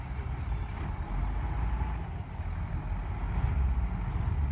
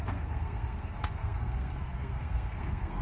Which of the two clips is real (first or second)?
first